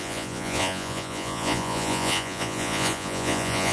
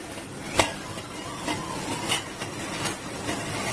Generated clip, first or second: first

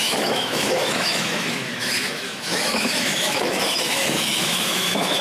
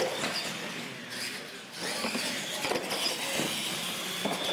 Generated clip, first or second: first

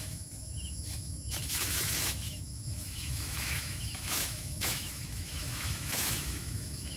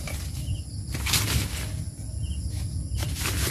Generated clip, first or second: first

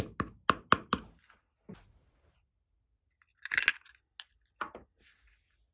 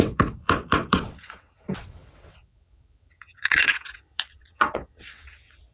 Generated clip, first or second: second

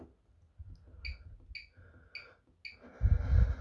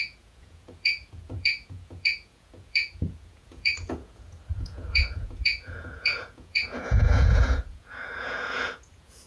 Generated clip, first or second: second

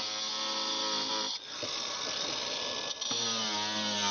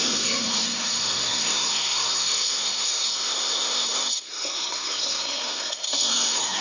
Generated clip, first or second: second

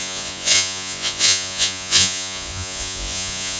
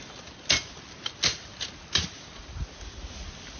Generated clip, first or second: first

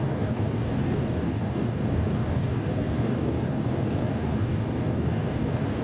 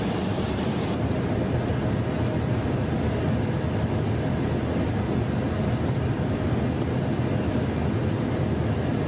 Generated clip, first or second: first